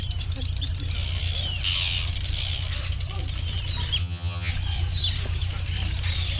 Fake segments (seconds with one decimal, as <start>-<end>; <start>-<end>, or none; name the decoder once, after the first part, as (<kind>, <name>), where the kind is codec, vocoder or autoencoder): 4.0-4.5 (vocoder, HiFi-GAN)